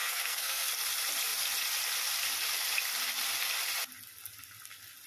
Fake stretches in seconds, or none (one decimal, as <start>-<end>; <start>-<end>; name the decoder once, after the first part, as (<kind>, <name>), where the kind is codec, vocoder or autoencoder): 0.0-0.7 (codec, SNAC)